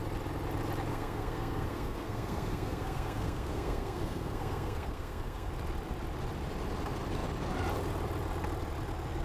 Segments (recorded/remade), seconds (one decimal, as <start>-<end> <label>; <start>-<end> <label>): 0.0-0.9 recorded; 0.9-5.5 remade; 5.5-9.2 recorded

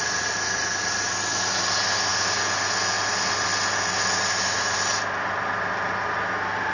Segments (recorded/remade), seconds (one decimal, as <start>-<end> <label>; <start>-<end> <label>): 0.0-6.7 recorded

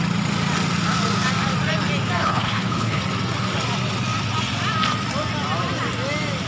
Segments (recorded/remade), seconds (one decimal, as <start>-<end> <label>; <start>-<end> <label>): 0.0-2.2 recorded; 2.2-3.0 remade; 3.0-6.5 recorded

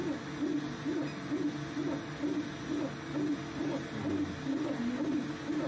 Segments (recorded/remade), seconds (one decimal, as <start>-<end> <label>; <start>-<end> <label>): 0.0-5.7 recorded

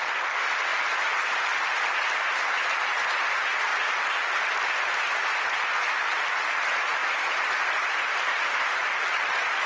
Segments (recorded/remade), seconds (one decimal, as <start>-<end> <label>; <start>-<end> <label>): 0.0-9.7 recorded

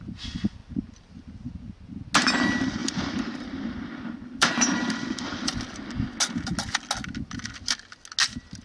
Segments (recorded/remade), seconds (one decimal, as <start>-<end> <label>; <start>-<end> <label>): 0.0-0.6 recorded; 0.6-1.2 remade; 1.2-2.8 recorded; 2.8-5.8 remade; 5.8-8.6 recorded